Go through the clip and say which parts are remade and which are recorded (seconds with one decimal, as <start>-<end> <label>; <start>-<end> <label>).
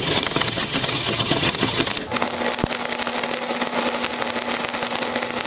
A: 0.0-1.9 remade; 1.9-5.5 recorded